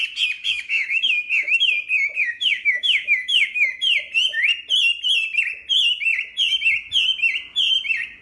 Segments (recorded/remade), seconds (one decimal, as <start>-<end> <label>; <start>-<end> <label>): 0.0-0.4 recorded; 0.4-1.7 remade; 1.7-2.2 recorded; 2.2-3.7 remade; 3.7-8.2 recorded